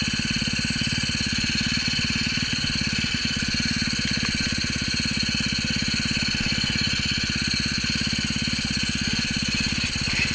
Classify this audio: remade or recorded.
recorded